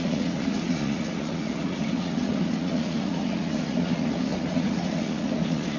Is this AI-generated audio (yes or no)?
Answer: yes